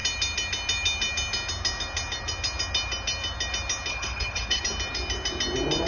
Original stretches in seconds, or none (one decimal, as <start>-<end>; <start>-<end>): 0.0-3.9; 4.6-5.9

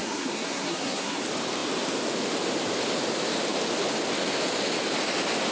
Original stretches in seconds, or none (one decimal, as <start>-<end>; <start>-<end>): 1.2-5.5

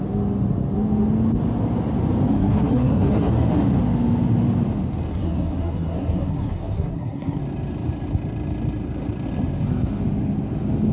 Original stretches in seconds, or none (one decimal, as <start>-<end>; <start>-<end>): 0.0-2.3; 3.3-5.1; 7.4-10.9

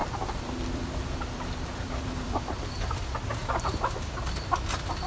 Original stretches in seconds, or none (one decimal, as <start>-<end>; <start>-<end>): 2.9-5.1

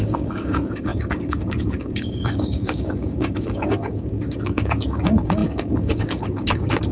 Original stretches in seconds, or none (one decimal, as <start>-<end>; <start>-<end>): none

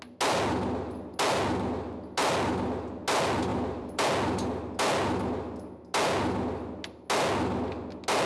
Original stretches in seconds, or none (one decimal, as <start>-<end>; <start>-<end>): 0.0-3.5; 4.0-8.3

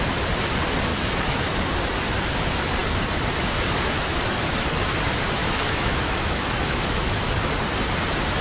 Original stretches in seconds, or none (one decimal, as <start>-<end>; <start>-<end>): 0.0-0.9; 1.5-5.4; 7.3-8.4

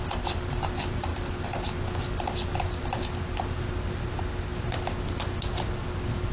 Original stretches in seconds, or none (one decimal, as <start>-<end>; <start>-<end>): 0.0-6.3